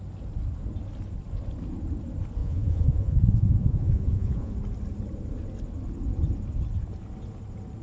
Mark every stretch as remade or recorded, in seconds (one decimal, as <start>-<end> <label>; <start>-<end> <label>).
0.0-2.4 recorded; 2.4-4.5 remade; 4.5-7.8 recorded